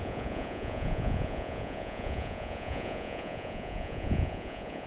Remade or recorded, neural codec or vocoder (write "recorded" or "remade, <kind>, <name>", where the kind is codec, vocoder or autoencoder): remade, vocoder, Vocos